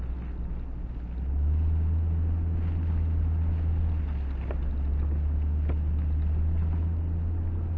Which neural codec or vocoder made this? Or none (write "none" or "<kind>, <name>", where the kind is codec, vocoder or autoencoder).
none